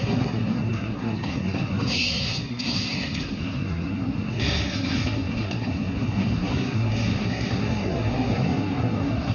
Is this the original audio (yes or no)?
no